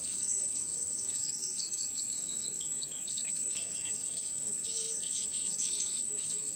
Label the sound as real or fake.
fake